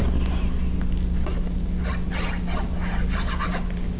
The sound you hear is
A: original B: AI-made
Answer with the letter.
A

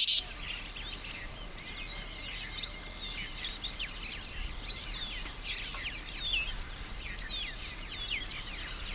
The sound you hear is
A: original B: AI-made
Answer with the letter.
A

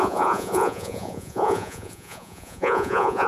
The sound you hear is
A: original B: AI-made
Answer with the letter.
B